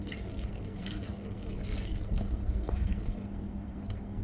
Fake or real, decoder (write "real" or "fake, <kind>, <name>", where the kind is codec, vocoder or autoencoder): fake, codec, SNAC